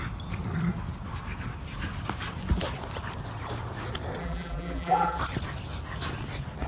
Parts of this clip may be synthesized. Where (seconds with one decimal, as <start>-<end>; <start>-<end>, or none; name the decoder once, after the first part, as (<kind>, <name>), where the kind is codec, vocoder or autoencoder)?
4.2-5.2 (vocoder, BigVGAN v2)